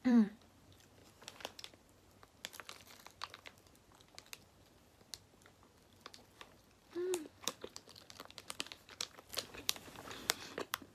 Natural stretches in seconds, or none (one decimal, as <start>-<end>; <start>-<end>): 1.0-5.8